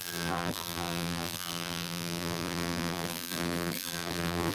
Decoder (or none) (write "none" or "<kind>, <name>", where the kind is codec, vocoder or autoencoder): vocoder, BigVGAN v2